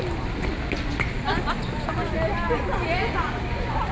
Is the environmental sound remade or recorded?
recorded